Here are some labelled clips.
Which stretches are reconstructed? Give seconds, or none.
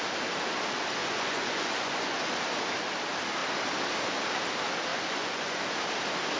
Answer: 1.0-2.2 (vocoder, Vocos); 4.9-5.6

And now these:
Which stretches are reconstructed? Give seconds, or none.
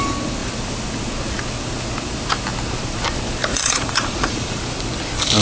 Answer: 3.5-4.6 (vocoder, Vocos)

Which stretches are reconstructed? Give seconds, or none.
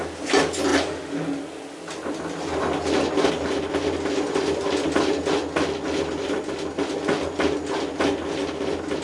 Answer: none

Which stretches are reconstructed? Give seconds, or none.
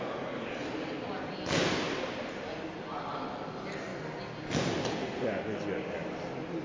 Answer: none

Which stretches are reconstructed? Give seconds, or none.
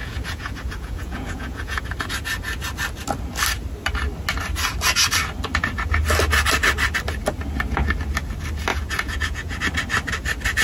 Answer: 0.0-1.8 (vocoder, Vocos); 8.7-9.6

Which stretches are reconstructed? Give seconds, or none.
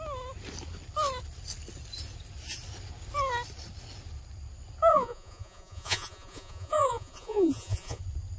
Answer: 4.9-8.0 (vocoder, Vocos)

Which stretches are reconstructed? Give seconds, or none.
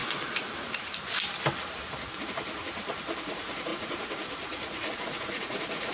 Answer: 3.2-5.9 (vocoder, Vocos)